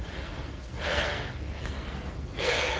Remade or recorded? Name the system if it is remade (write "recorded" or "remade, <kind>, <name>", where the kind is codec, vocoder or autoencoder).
remade, codec, SNAC